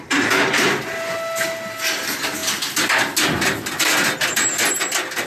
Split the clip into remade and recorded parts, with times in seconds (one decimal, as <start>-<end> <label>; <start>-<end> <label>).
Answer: 0.0-5.3 recorded